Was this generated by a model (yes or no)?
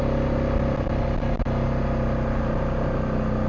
no